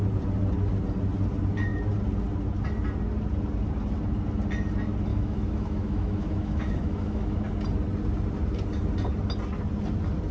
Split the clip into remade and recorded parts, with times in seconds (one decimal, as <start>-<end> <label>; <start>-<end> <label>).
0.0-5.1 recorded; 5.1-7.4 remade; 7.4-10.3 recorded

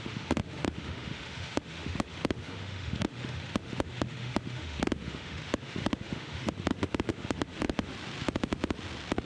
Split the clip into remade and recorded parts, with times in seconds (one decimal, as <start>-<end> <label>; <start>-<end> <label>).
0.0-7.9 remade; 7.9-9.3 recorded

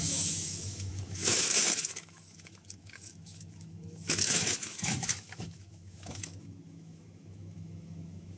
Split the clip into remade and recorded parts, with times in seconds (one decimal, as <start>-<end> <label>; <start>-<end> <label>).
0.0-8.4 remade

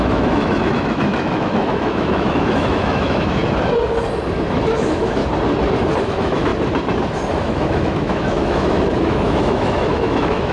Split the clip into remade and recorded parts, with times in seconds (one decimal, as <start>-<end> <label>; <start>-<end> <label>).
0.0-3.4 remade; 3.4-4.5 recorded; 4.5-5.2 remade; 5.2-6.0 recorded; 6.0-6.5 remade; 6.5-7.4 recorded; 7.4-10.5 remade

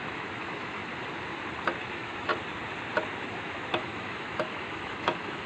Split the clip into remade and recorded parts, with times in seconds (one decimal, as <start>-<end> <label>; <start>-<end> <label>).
0.0-0.8 remade; 0.8-1.8 recorded; 1.8-2.3 remade; 2.3-3.2 recorded; 3.2-5.5 remade